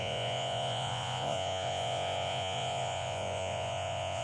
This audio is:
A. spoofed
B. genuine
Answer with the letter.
A